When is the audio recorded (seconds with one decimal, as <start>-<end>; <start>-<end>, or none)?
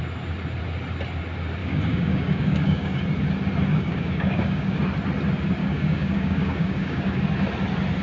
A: 0.0-1.6; 3.0-3.7; 4.8-5.6; 7.2-8.0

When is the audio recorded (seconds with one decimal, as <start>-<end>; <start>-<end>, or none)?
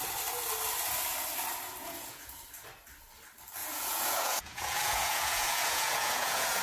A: 0.0-1.8; 2.4-3.6